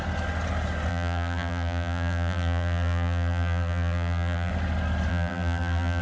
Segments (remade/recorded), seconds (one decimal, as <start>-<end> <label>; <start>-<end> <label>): 0.0-0.9 recorded; 0.9-4.5 remade; 4.5-5.1 recorded; 5.1-6.0 remade